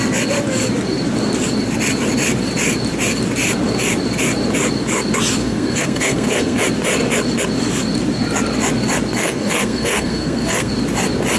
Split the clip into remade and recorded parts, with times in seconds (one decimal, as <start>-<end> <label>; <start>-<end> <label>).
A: 0.0-5.4 recorded; 5.4-6.6 remade; 6.6-9.2 recorded; 9.2-10.7 remade; 10.7-11.4 recorded